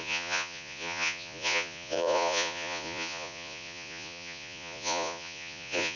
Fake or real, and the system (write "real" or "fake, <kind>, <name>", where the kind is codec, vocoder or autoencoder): fake, vocoder, Vocos